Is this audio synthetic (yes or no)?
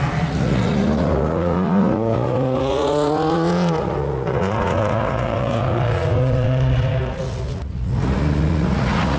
yes